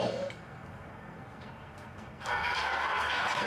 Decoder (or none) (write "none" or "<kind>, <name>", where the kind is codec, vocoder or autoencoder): codec, SNAC